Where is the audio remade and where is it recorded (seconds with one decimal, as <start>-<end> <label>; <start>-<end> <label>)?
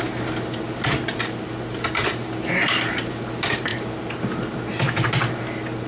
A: 0.0-5.9 recorded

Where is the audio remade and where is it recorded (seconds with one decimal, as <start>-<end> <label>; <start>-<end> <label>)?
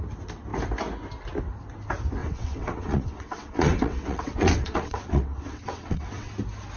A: 0.0-2.2 recorded; 2.2-6.3 remade; 6.3-6.8 recorded